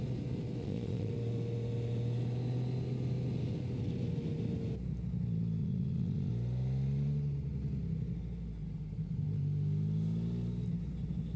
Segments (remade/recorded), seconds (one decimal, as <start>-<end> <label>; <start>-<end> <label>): 0.0-0.6 recorded; 0.6-1.1 remade; 1.1-5.6 recorded; 5.6-6.3 remade; 6.3-11.4 recorded